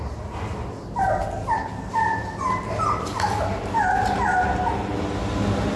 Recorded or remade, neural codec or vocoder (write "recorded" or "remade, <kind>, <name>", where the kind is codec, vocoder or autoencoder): recorded